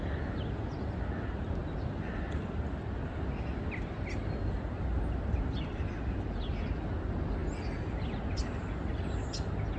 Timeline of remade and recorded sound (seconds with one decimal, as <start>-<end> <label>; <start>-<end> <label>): 0.0-9.8 recorded